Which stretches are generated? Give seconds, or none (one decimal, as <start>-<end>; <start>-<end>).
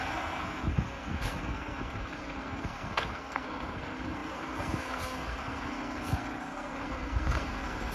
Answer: 0.0-7.9